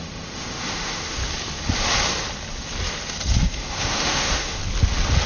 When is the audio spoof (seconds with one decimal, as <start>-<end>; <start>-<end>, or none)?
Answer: 0.0-1.2; 3.4-4.6